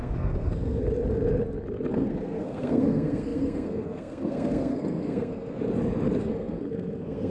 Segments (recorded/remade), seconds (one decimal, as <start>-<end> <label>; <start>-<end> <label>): 0.0-0.8 remade; 0.8-1.9 recorded; 1.9-5.6 remade; 5.6-6.2 recorded; 6.2-7.3 remade